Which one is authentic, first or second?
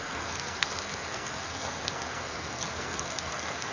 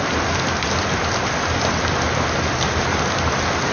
second